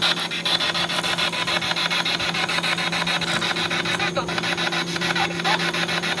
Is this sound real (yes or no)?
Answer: yes